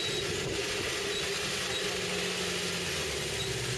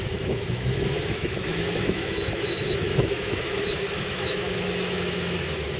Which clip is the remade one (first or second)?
second